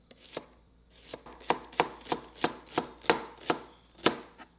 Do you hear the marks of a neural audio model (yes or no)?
no